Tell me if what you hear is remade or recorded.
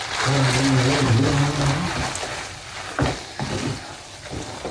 recorded